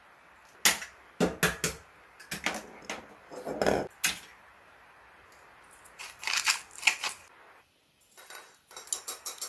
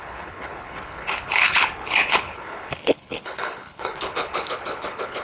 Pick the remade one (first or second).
second